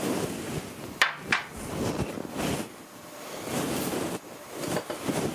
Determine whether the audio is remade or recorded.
recorded